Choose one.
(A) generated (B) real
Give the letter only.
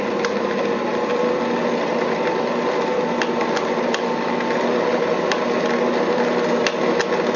B